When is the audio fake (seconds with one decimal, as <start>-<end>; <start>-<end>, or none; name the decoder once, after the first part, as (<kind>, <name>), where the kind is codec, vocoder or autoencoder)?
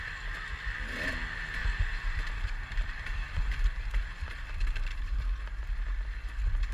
1.6-5.6 (vocoder, BigVGAN v2)